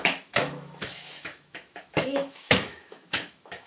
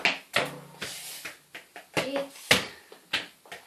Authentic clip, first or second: second